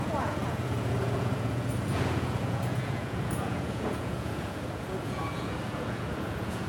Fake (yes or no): yes